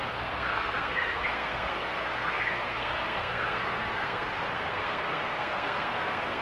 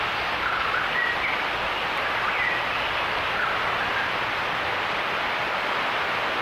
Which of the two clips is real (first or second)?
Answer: second